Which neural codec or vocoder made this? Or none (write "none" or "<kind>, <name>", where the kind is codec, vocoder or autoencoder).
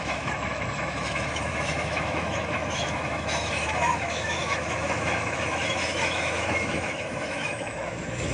autoencoder, DAC-VAE